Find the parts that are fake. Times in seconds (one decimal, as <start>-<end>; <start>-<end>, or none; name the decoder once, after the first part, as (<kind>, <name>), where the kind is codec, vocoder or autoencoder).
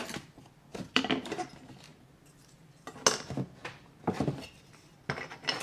0.7-1.5 (vocoder, BigVGAN v2)